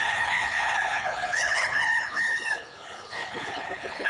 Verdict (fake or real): fake